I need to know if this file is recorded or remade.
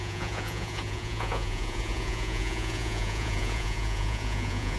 remade